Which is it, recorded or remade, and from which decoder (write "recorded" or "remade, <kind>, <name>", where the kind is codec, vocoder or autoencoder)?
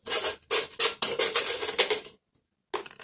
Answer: recorded